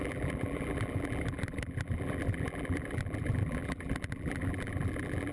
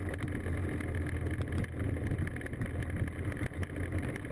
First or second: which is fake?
first